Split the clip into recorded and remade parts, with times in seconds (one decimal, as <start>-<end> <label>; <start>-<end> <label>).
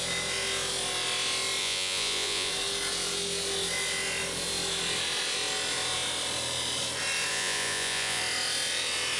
0.0-1.6 recorded; 1.6-2.5 remade; 2.5-7.3 recorded; 7.3-8.2 remade; 8.2-9.2 recorded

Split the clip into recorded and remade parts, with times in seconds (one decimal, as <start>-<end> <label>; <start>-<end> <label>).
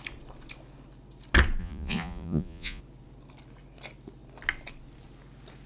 0.0-1.6 recorded; 1.6-2.8 remade; 2.8-5.7 recorded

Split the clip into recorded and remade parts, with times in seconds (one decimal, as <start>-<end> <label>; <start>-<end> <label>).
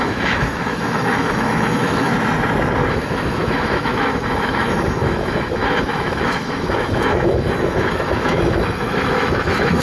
0.0-2.1 remade; 2.1-2.9 recorded; 2.9-9.8 remade